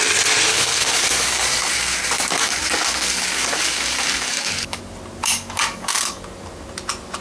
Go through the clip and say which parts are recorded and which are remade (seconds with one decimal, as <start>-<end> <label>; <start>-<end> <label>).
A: 0.0-0.5 recorded; 0.5-4.8 remade; 4.8-5.2 recorded; 5.2-6.2 remade; 6.2-7.2 recorded

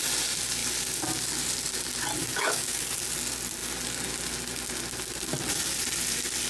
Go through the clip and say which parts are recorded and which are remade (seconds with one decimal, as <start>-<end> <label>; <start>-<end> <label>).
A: 0.0-2.2 recorded; 2.2-2.8 remade; 2.8-6.5 recorded

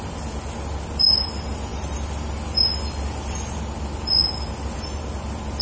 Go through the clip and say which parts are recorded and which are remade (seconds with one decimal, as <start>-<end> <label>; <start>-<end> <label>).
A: 0.0-5.6 recorded

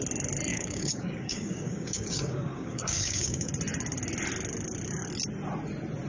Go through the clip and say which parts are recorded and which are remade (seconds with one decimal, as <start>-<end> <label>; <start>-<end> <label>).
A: 0.0-0.5 recorded; 0.5-3.5 remade; 3.5-6.1 recorded

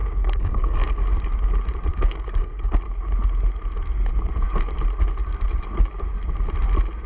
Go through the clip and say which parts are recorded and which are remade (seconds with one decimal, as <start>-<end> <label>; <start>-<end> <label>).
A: 0.0-0.9 remade; 0.9-1.9 recorded; 1.9-2.7 remade; 2.7-7.1 recorded

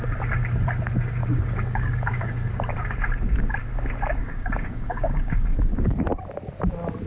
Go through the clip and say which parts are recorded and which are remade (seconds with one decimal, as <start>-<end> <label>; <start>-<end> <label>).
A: 0.0-1.2 recorded; 1.2-2.5 remade; 2.5-4.2 recorded; 4.2-5.6 remade; 5.6-7.1 recorded

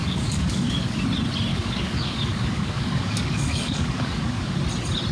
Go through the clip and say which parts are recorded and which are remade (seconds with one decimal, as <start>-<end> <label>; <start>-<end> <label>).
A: 0.0-1.0 remade; 1.0-1.5 recorded; 1.5-4.6 remade; 4.6-5.1 recorded